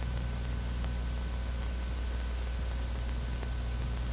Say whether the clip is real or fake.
real